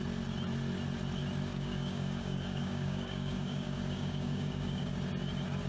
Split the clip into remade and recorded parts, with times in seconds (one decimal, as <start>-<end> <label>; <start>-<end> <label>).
0.0-1.5 recorded; 1.5-4.9 remade; 4.9-5.7 recorded